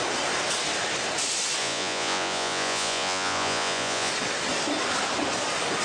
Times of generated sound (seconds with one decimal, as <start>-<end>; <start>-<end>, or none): 1.6-4.1